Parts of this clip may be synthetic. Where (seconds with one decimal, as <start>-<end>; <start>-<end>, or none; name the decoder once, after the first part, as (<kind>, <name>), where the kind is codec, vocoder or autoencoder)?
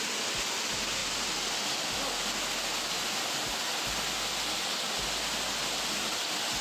none